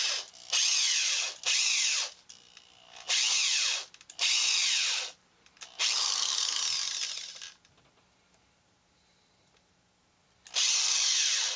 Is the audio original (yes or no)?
yes